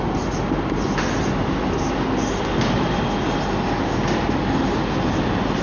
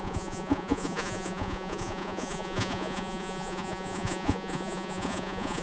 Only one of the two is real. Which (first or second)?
first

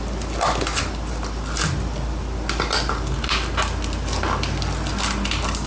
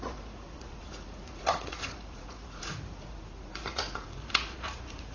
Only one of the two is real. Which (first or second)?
first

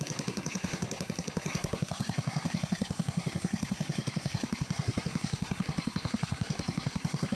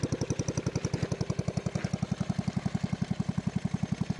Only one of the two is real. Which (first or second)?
second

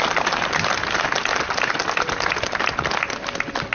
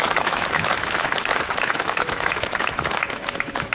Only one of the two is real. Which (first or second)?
first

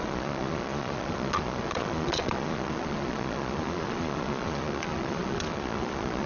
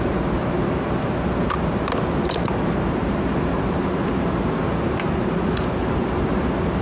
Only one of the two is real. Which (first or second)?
second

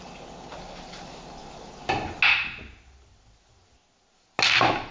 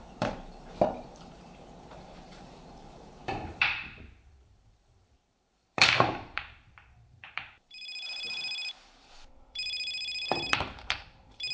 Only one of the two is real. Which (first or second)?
first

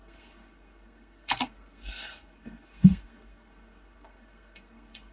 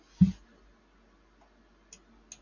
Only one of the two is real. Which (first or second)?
second